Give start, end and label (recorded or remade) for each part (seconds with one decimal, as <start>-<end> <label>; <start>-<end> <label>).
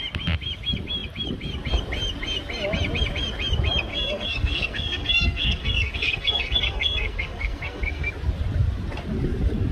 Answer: 0.0-3.9 recorded; 3.9-8.1 remade; 8.1-9.7 recorded